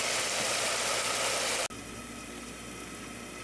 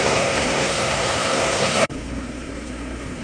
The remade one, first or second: second